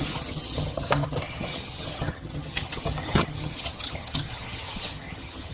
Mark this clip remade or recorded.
remade